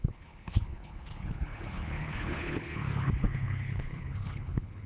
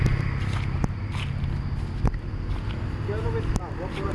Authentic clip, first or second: second